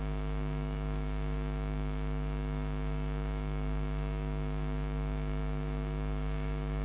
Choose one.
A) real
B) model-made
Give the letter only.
B